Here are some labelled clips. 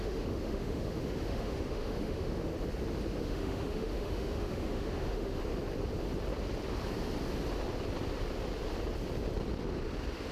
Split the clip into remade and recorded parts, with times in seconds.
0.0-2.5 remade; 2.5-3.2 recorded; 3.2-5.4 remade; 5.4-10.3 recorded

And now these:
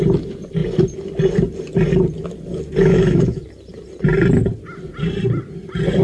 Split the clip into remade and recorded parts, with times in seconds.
0.0-2.8 recorded; 2.8-3.4 remade; 3.4-6.0 recorded